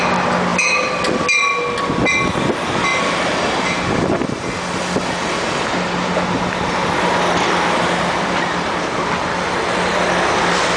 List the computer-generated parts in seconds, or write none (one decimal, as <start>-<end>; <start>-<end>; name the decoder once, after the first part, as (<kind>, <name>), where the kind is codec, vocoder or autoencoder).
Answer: none